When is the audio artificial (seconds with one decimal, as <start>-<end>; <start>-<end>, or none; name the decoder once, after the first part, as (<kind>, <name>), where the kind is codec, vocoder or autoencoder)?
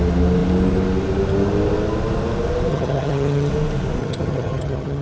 2.7-3.5 (vocoder, HiFi-GAN); 4.0-5.0